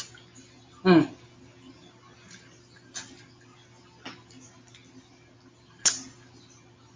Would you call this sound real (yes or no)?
yes